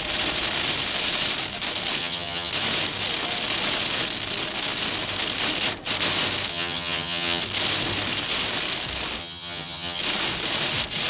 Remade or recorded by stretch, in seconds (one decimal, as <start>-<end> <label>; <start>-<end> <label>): 0.0-2.0 recorded; 2.0-2.5 remade; 2.5-6.5 recorded; 6.5-7.4 remade; 7.4-9.2 recorded; 9.2-10.0 remade; 10.0-11.1 recorded